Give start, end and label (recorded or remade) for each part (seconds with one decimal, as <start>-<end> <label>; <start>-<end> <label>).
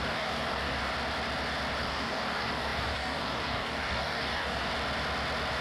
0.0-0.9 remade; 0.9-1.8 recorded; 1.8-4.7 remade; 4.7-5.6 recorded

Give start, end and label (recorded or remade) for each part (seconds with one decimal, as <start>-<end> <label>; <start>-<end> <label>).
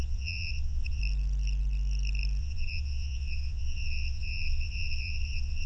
0.0-1.0 remade; 1.0-2.4 recorded; 2.4-5.7 remade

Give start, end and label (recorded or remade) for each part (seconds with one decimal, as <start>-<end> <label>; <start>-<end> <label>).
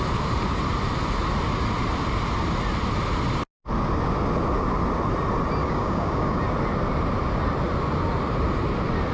0.0-5.6 recorded; 5.6-6.4 remade; 6.4-9.1 recorded